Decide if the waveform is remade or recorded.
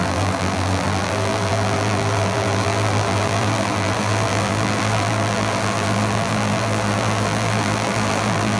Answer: remade